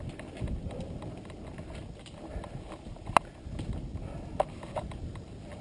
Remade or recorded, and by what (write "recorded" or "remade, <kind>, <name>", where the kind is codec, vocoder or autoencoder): recorded